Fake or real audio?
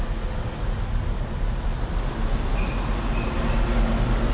real